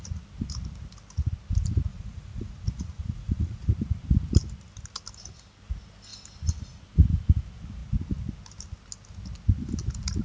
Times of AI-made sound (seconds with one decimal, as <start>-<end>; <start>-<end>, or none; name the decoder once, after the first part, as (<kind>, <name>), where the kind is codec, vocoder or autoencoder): 1.9-3.7 (vocoder, Vocos)